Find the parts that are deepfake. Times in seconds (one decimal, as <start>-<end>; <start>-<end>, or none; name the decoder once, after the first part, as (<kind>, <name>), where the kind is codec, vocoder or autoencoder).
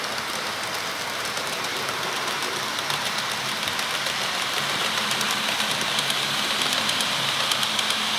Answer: 1.7-3.2 (vocoder, BigVGAN v2)